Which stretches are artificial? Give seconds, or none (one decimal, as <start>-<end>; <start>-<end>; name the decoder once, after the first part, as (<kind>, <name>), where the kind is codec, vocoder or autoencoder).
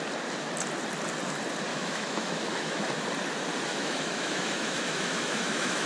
1.7-2.8 (autoencoder, DAC-VAE); 3.7-5.9